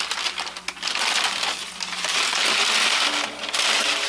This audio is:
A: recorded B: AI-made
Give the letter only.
A